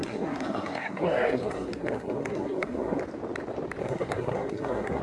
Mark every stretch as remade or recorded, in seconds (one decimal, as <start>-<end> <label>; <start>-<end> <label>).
0.0-3.0 remade; 3.0-3.8 recorded; 3.8-5.0 remade